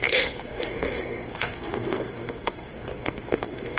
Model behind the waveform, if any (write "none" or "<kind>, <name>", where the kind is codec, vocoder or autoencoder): codec, SNAC